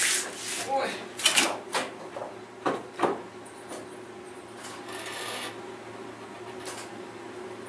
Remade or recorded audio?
recorded